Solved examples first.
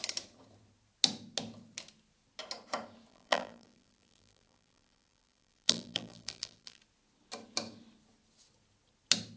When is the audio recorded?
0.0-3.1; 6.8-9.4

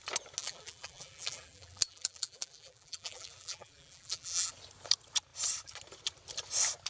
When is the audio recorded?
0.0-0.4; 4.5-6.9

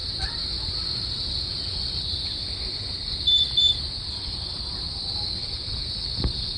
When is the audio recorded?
0.0-4.5; 5.0-5.4

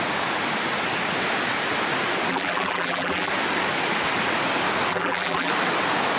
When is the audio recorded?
0.0-2.3; 3.3-4.9; 5.5-6.2